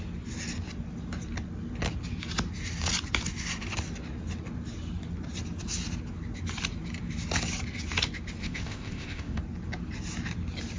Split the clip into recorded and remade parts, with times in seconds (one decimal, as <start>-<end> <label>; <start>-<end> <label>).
0.0-8.4 recorded; 8.4-9.4 remade; 9.4-10.8 recorded